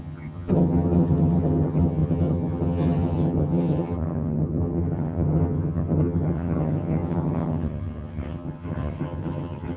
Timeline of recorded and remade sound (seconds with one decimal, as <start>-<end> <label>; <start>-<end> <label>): 0.0-9.8 remade